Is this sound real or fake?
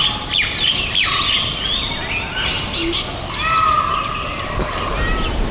real